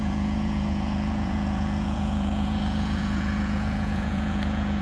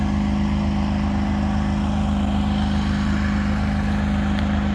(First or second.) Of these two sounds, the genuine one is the second